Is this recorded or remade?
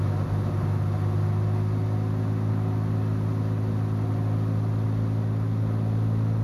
recorded